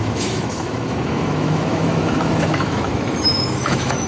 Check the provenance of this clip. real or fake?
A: fake